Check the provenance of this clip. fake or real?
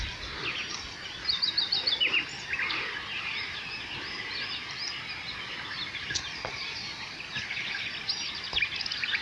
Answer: real